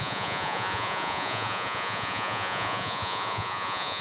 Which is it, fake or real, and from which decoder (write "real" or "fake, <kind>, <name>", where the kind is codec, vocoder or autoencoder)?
fake, vocoder, Vocos